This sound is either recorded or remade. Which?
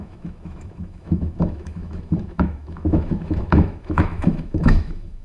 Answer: remade